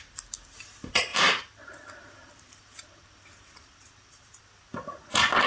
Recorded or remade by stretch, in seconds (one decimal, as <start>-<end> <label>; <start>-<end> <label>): 0.0-1.1 recorded; 1.1-4.4 remade; 4.4-5.5 recorded